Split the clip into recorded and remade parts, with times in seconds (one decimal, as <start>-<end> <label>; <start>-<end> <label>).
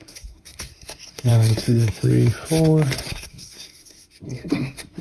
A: 0.0-2.1 remade; 2.1-3.1 recorded; 3.1-5.0 remade